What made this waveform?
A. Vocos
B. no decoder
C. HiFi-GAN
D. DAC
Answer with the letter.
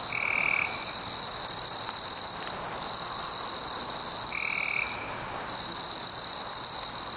B